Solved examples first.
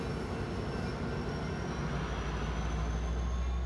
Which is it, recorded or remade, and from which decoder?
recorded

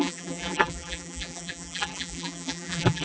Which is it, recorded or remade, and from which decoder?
remade, vocoder, BigVGAN v2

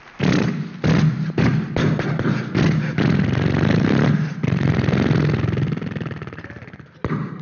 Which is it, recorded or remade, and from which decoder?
recorded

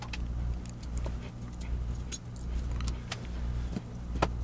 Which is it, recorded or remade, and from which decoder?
recorded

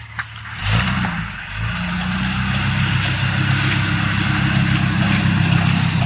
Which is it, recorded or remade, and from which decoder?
recorded